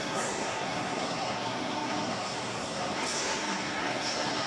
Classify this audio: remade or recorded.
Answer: remade